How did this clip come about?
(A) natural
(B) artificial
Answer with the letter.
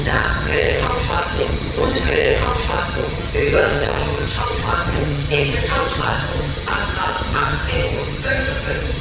B